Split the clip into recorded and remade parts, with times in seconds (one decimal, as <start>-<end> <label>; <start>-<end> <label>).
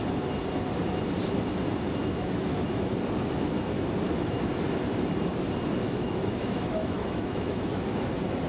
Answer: 0.0-2.0 recorded; 2.0-2.9 remade; 2.9-5.8 recorded; 5.8-8.1 remade; 8.1-8.5 recorded